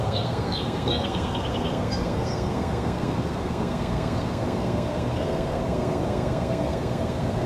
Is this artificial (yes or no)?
yes